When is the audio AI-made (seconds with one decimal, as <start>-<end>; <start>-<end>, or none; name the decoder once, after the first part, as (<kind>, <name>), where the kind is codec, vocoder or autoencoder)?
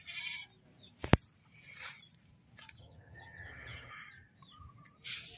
2.8-3.9 (vocoder, HiFi-GAN)